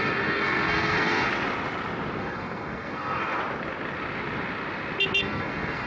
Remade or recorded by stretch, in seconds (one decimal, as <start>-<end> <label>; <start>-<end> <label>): 0.0-1.3 remade; 1.3-2.2 recorded; 2.2-3.4 remade; 3.4-5.2 recorded; 5.2-5.9 remade